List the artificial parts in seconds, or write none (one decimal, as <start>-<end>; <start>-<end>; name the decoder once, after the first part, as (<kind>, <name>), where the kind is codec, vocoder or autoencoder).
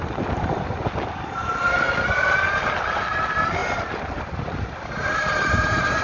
none